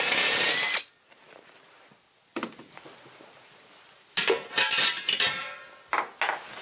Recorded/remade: recorded